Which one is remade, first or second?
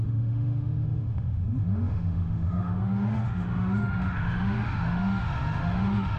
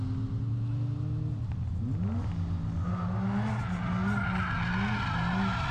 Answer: first